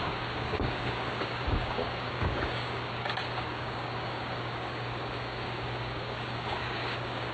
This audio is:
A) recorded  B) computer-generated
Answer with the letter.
B